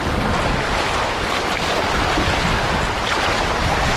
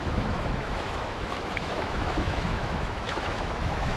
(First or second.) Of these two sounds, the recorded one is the first